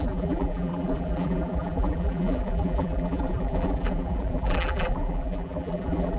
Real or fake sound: fake